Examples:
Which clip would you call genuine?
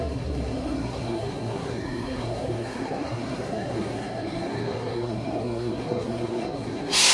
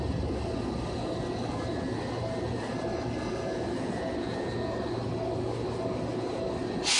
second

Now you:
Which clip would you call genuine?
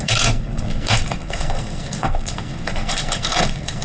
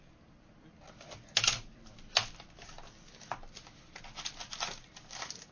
second